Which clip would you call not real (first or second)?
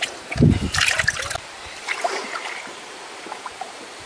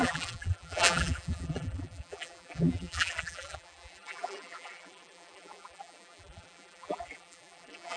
second